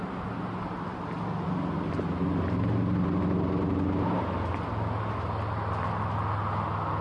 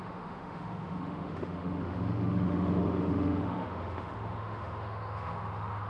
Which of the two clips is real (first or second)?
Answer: first